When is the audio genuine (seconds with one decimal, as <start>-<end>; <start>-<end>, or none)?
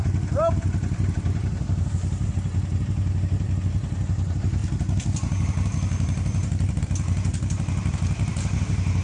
0.0-9.0